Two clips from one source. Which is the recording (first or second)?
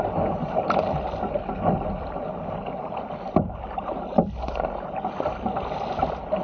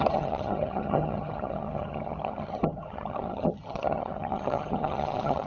first